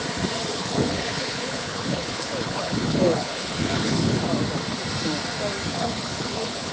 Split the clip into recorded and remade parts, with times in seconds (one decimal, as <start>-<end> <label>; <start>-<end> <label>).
0.0-0.5 recorded; 0.5-4.2 remade; 4.2-5.7 recorded; 5.7-6.7 remade